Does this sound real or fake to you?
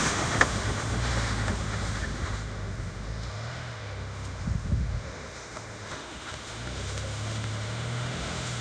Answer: fake